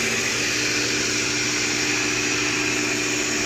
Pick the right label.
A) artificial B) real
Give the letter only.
B